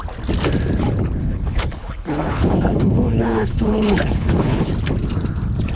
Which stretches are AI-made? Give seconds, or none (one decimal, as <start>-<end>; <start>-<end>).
1.2-4.7